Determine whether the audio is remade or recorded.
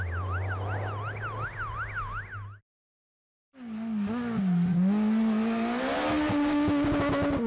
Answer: recorded